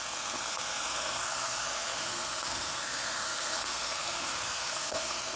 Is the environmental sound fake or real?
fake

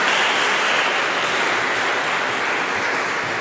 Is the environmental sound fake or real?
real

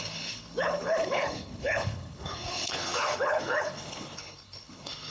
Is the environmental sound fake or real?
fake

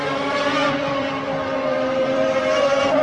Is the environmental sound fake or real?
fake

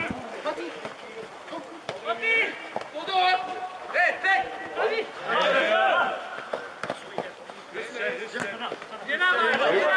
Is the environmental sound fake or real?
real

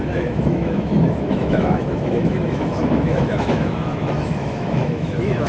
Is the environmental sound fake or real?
fake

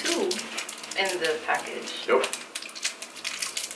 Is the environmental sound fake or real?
real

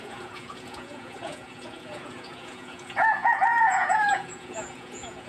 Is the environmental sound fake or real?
fake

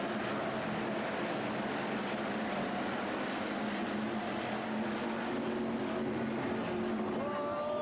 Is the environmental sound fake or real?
real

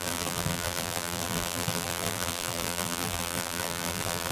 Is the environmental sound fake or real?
fake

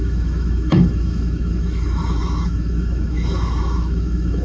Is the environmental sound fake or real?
fake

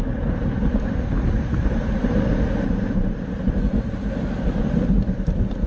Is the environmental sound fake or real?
real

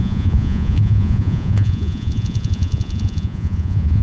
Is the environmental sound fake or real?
fake